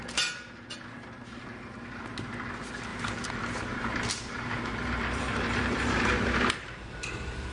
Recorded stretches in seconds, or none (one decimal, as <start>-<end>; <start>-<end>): 0.0-2.9

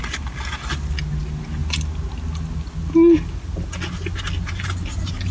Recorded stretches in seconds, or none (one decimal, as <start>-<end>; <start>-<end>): 0.0-5.3